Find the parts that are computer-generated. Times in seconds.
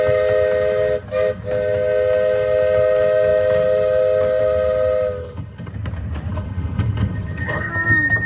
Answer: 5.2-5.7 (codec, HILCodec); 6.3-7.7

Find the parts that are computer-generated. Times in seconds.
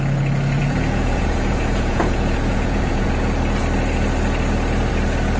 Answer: 0.6-3.1 (vocoder, Vocos)